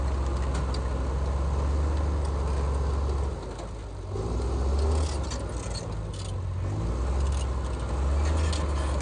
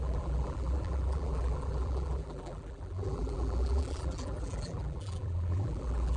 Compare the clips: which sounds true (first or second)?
first